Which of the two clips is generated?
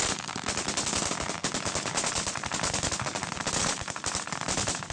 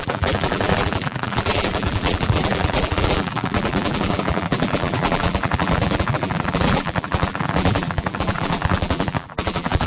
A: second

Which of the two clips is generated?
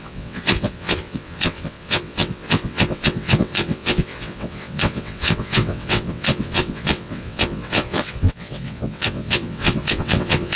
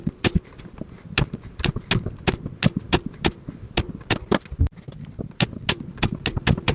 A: first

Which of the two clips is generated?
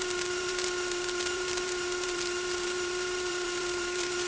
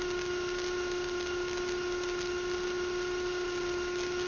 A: first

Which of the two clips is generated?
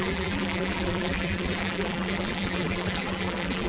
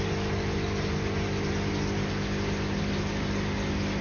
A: first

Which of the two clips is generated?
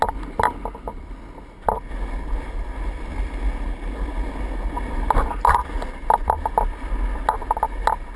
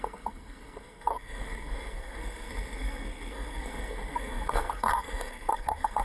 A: second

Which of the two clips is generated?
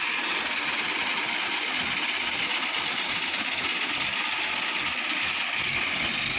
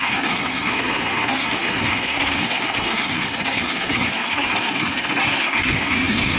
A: second